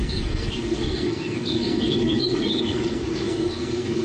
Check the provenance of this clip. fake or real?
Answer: fake